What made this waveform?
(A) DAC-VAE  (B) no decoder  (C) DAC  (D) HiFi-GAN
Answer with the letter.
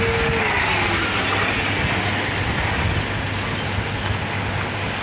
B